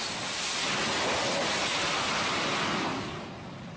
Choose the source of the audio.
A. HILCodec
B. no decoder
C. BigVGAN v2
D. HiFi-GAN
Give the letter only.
B